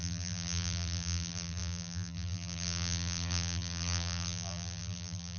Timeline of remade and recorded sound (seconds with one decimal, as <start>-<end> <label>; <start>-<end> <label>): 0.0-5.4 remade